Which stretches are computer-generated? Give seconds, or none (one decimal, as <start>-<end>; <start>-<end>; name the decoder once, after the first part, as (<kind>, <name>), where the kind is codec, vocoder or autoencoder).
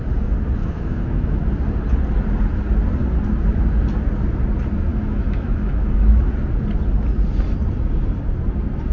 0.6-1.4 (autoencoder, DAC-VAE); 4.9-6.3